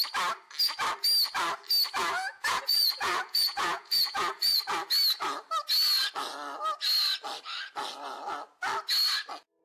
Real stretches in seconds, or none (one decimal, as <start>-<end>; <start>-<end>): 0.0-2.0; 4.6-9.6